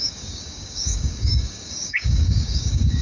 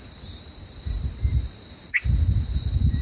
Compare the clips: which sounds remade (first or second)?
first